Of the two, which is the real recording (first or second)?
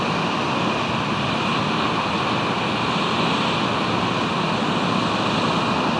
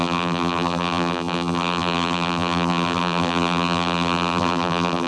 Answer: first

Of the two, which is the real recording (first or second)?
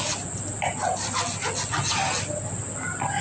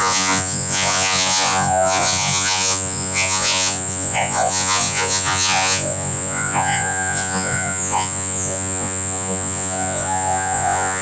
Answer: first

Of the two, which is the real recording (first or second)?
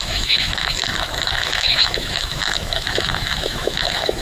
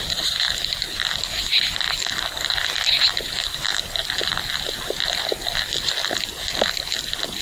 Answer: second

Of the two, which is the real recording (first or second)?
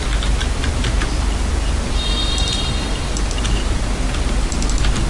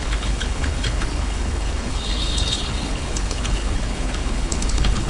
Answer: first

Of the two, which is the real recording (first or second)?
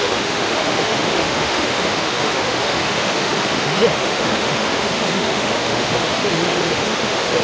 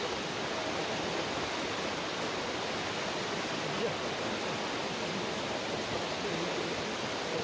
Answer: second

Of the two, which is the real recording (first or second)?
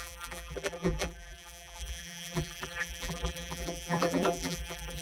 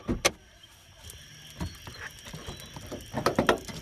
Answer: second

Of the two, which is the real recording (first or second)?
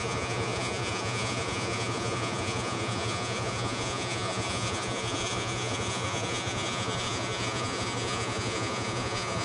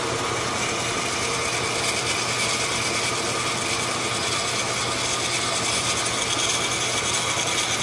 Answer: second